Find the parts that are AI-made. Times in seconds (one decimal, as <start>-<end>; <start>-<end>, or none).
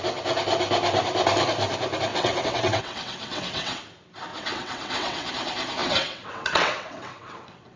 2.1-3.8; 4.3-5.3; 5.8-7.8